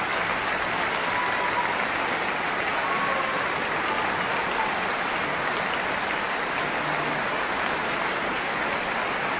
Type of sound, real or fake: real